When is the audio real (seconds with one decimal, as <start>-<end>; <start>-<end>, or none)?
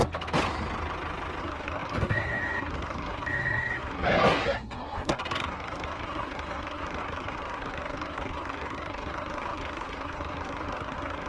0.0-1.4